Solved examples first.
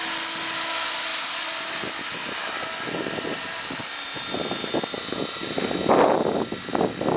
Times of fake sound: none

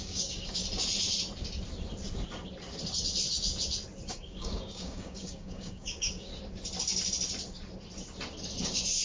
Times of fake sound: 0.0-0.6 (codec, DAC); 4.1-6.3; 8.6-9.0

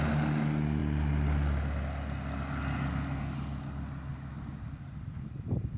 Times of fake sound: none

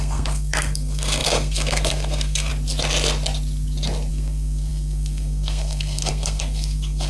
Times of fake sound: 0.0-2.5 (codec, SNAC); 4.1-7.1

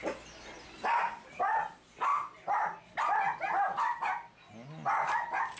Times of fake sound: none